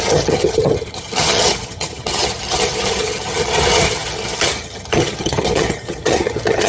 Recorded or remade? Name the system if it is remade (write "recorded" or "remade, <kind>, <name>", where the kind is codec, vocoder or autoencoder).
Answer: remade, vocoder, HiFi-GAN